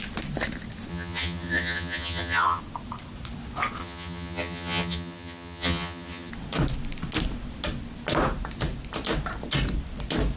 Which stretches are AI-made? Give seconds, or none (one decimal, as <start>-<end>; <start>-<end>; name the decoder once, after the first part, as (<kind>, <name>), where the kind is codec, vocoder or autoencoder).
0.9-2.6 (vocoder, HiFi-GAN); 3.8-6.3